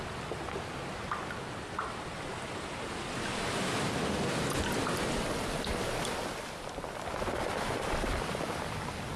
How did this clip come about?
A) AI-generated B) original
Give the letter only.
B